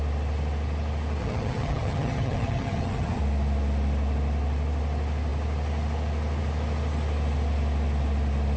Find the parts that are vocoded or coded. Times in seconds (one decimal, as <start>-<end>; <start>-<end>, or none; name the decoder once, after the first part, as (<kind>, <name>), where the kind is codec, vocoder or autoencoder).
1.2-3.2 (vocoder, HiFi-GAN)